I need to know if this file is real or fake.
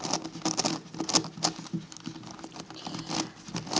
real